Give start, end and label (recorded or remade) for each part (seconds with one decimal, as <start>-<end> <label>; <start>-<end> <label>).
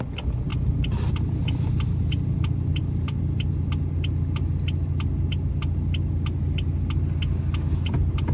0.0-8.3 recorded